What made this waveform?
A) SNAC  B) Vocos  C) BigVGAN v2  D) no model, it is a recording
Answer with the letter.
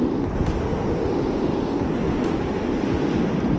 D